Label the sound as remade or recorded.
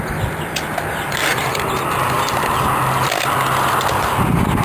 recorded